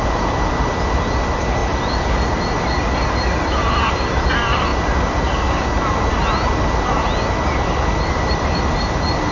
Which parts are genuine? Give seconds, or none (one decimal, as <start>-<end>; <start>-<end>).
1.6-3.1; 4.7-8.3

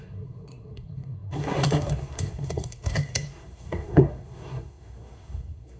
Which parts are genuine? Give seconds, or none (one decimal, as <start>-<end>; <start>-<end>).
none

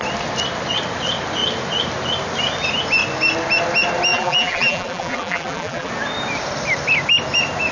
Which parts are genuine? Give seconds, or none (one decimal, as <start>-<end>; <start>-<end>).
0.0-4.1; 5.9-7.7

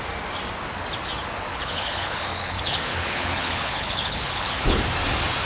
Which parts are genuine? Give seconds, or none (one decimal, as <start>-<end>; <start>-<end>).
0.0-1.5; 4.8-5.5

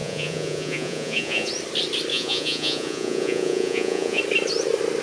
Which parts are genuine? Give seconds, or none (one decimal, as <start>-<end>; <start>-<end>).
1.5-2.1; 4.2-5.0

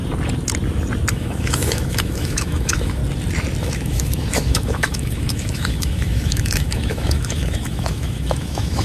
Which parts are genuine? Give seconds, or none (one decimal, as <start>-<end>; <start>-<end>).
0.0-1.1; 3.0-3.6